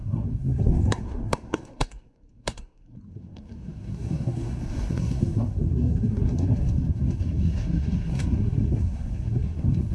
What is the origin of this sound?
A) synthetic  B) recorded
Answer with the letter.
A